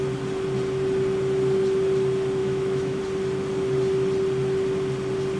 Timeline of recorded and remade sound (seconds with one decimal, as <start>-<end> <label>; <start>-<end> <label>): 0.0-2.4 recorded; 2.4-3.0 remade; 3.0-5.4 recorded